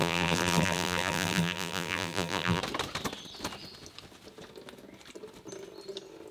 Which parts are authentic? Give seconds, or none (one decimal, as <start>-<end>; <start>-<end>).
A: 2.6-6.3